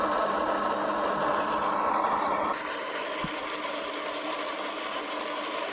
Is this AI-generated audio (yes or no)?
no